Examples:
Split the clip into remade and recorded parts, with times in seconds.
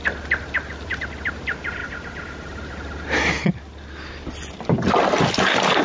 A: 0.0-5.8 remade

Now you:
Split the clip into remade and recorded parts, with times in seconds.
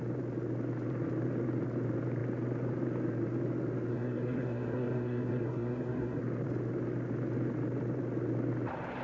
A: 0.0-3.9 recorded; 3.9-6.2 remade; 6.2-9.0 recorded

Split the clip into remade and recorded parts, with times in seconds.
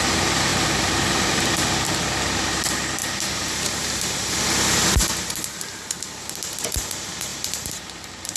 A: 0.0-0.5 recorded; 0.5-1.5 remade; 1.5-3.0 recorded; 3.0-4.1 remade; 4.1-7.3 recorded; 7.3-8.4 remade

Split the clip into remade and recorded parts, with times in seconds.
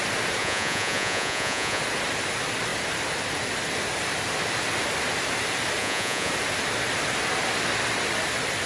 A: 0.0-0.4 recorded; 0.4-1.8 remade; 1.8-5.8 recorded; 5.8-6.3 remade; 6.3-8.7 recorded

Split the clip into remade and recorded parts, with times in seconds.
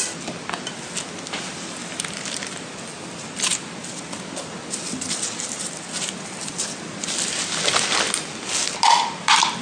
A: 0.0-9.6 recorded